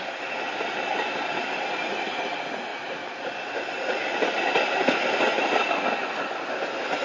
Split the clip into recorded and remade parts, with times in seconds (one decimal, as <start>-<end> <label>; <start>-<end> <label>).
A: 0.0-7.0 recorded